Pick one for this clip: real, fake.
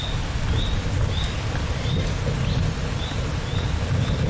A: real